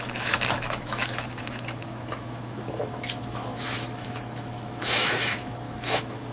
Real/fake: fake